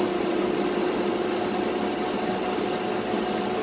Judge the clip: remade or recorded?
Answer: recorded